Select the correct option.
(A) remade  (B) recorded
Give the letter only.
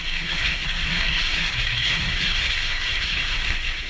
A